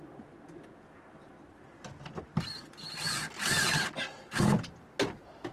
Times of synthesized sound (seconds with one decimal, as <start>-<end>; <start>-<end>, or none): none